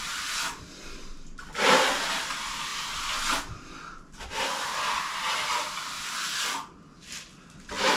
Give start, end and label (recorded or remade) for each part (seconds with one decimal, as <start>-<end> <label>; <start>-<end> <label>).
0.0-8.0 recorded